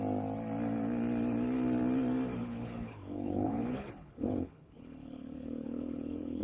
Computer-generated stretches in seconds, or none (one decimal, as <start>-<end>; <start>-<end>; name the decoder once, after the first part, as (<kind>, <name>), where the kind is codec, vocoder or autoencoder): 2.4-6.4 (codec, HILCodec)